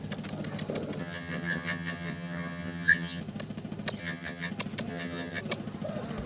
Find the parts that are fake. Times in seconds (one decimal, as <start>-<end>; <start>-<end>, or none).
1.0-3.2; 4.0-4.5; 4.9-5.4